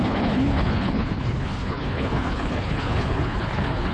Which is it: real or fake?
fake